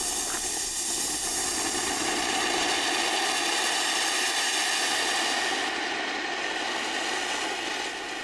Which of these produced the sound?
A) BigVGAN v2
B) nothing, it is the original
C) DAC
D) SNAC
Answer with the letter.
B